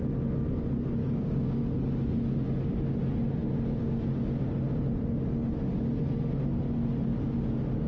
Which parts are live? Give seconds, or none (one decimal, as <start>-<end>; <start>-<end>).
0.0-1.0; 1.6-7.9